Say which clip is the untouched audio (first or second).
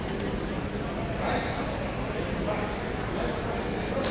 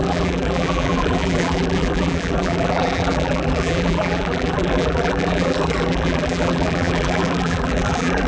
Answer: first